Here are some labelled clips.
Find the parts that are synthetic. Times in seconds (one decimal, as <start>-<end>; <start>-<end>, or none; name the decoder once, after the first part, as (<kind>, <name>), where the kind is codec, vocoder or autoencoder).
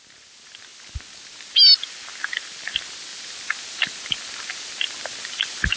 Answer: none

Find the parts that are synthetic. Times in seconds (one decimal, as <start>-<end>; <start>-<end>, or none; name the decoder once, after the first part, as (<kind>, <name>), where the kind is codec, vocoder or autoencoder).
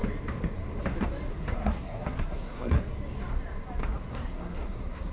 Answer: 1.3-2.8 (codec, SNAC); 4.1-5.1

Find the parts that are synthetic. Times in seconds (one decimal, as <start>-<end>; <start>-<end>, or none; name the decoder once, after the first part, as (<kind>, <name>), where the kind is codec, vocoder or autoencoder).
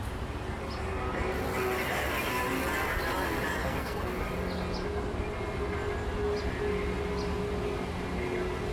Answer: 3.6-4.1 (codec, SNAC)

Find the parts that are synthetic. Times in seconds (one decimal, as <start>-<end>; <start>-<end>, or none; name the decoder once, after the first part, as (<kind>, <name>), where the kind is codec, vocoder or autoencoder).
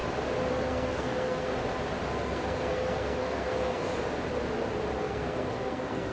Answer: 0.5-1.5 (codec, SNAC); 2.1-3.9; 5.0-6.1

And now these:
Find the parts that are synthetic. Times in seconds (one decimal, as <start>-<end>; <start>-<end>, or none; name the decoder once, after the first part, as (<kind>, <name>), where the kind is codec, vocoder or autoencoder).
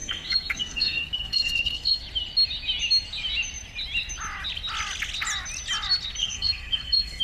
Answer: 0.0-2.0 (codec, SNAC); 6.2-7.2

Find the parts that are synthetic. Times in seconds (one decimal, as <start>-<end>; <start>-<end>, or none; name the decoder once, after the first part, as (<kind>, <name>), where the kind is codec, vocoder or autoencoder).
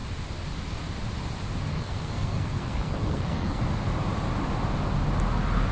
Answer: 1.7-3.6 (codec, SNAC)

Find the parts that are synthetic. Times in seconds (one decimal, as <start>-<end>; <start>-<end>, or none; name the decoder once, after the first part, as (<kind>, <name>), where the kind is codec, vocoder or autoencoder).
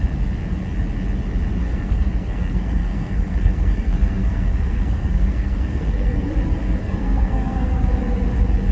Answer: 1.6-6.3 (codec, SNAC); 6.8-7.9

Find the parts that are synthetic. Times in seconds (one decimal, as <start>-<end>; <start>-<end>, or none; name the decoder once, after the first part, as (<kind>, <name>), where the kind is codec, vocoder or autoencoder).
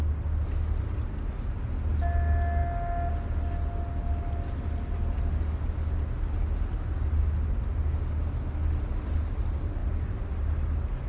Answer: none